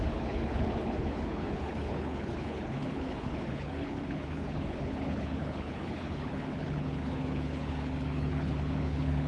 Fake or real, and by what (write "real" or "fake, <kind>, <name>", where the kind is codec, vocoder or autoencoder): fake, codec, HILCodec